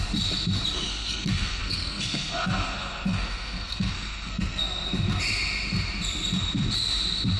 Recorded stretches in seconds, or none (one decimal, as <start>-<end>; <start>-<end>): 0.0-0.9; 4.6-7.4